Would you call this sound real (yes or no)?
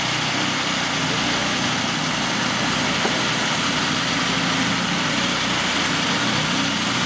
yes